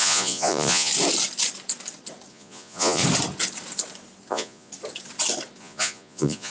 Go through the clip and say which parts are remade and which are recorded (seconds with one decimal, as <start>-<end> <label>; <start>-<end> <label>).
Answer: 0.0-0.9 remade; 0.9-2.3 recorded; 2.3-3.0 remade; 3.0-4.3 recorded; 4.3-4.7 remade; 4.7-5.6 recorded; 5.6-6.5 remade